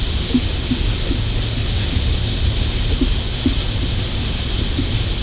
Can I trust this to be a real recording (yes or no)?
yes